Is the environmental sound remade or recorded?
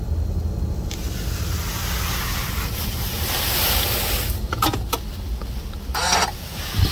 recorded